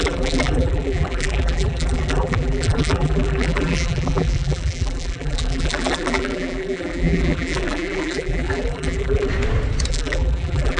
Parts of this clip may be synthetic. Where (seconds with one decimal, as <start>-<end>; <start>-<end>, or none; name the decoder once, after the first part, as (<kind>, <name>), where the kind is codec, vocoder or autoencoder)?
0.0-9.3 (vocoder, BigVGAN v2); 9.9-10.8